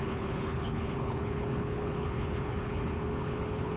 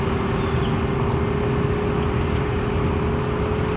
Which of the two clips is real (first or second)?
second